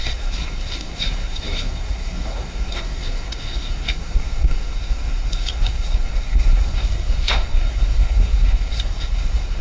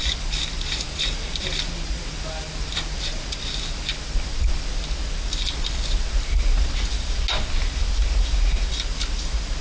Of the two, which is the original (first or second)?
second